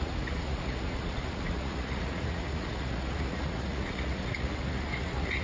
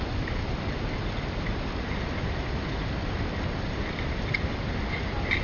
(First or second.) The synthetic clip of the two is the first